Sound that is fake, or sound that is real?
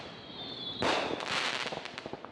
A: fake